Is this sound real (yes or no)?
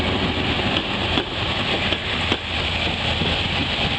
yes